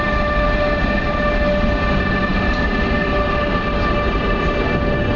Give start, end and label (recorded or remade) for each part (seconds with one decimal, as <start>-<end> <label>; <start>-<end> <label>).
0.0-5.2 recorded